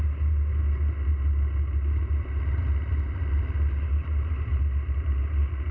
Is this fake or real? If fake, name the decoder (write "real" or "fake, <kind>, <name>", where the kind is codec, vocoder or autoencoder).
real